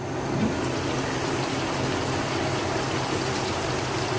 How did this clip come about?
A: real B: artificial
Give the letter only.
A